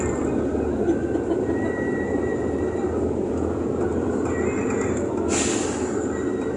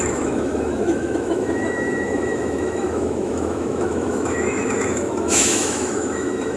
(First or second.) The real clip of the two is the first